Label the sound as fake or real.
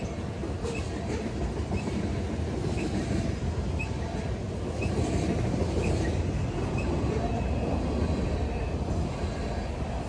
real